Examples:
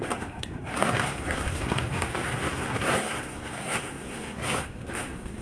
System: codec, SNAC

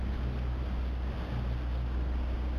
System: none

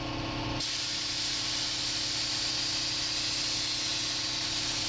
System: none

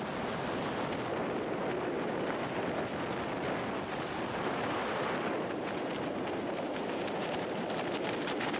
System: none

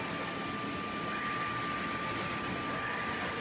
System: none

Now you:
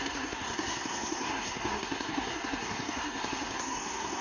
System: codec, SNAC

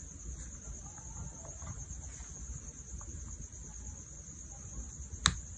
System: none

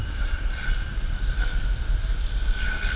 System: vocoder, BigVGAN v2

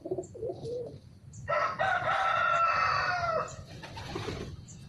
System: none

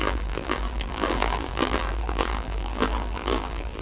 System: vocoder, BigVGAN v2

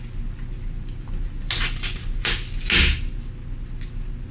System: none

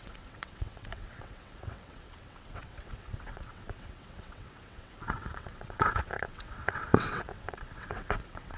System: vocoder, WaveNeXt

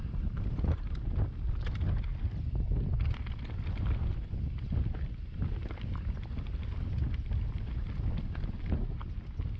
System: none